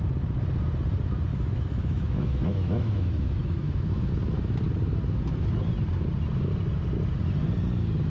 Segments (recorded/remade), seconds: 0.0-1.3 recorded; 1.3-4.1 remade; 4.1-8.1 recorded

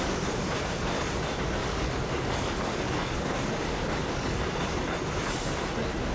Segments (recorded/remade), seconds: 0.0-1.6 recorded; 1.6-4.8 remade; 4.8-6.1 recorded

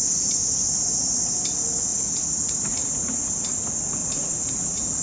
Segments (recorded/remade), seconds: 0.0-1.9 recorded; 1.9-3.3 remade; 3.3-4.0 recorded; 4.0-5.0 remade